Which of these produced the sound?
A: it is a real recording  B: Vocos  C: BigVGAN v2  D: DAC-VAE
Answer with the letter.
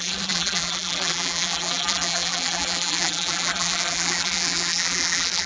C